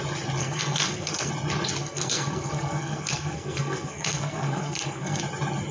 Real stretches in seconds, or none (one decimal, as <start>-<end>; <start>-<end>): 0.0-0.4; 1.3-1.8; 5.2-5.7